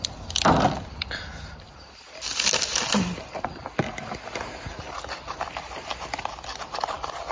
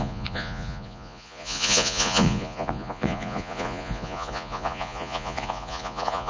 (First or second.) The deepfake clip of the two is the second